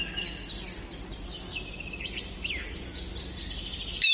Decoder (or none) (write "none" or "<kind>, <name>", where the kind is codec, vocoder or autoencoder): none